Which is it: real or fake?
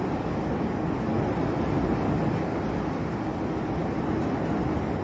real